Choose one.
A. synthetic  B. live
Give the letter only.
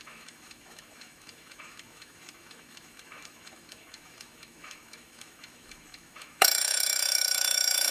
A